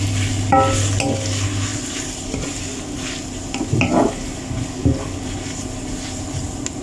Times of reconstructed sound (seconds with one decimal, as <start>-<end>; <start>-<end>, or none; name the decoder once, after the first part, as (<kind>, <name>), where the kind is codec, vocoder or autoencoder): none